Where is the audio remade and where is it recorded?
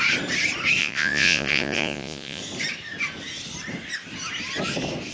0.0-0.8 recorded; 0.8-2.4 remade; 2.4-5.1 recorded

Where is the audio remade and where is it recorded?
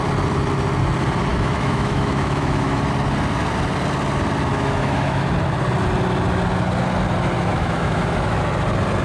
0.0-1.3 recorded; 1.3-2.8 remade; 2.8-4.5 recorded; 4.5-5.3 remade; 5.3-7.5 recorded; 7.5-8.4 remade; 8.4-9.0 recorded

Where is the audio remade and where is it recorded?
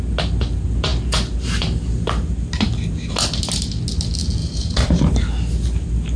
0.0-4.4 recorded; 4.4-5.3 remade; 5.3-6.2 recorded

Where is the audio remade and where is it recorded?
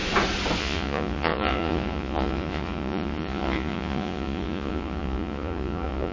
0.0-0.6 recorded; 0.6-6.1 remade